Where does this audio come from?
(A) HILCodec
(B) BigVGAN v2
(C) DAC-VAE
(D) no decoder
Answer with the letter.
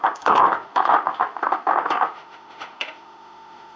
C